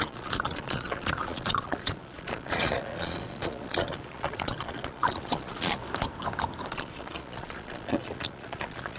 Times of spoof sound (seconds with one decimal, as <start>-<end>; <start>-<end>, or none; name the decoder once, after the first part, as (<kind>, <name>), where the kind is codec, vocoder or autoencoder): 0.0-5.8 (vocoder, Vocos); 6.7-9.0